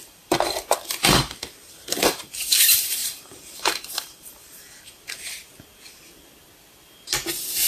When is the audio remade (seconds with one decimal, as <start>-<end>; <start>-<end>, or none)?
0.0-5.4